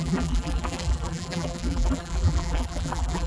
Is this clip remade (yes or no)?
yes